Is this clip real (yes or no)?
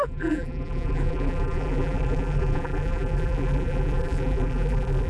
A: no